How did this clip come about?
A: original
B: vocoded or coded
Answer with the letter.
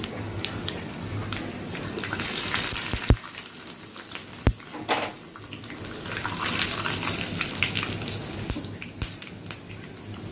A